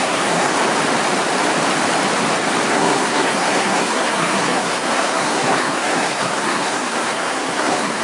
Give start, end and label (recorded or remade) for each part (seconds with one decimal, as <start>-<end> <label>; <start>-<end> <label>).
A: 0.0-0.5 remade; 0.5-2.7 recorded; 2.7-8.0 remade